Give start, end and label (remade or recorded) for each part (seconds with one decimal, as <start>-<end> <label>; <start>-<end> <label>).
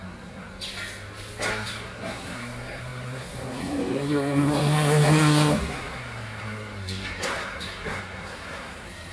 0.0-0.5 remade; 0.5-1.5 recorded; 1.5-9.1 remade